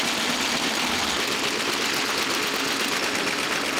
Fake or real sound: real